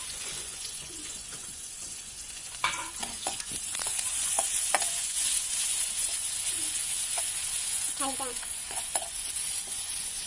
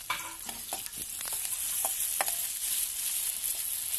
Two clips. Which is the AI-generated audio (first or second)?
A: first